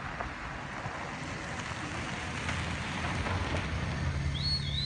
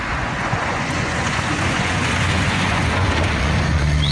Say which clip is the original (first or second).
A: first